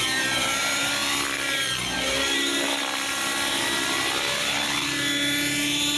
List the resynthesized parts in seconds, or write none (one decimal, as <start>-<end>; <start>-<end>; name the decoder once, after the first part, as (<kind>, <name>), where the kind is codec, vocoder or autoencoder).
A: none